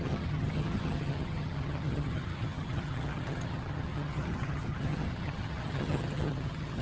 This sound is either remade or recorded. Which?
remade